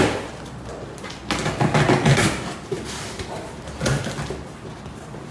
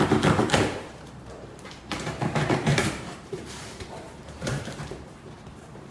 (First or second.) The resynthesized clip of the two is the second